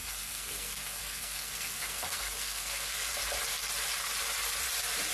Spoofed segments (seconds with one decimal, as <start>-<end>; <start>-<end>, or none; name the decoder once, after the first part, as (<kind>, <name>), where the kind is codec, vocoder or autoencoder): 0.0-3.1 (codec, SNAC)